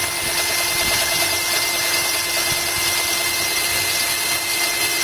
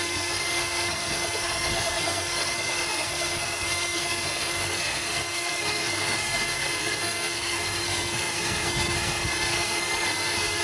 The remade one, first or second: second